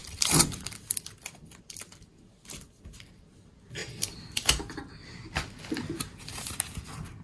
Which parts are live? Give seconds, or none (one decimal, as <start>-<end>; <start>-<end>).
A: 1.8-3.8; 5.0-7.2